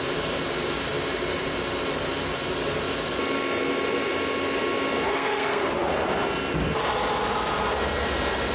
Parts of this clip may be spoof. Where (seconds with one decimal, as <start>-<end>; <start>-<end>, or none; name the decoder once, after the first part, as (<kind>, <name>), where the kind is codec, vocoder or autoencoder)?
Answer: 5.1-5.7 (codec, SNAC)